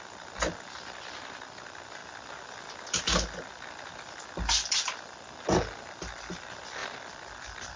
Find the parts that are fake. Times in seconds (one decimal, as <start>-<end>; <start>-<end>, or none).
none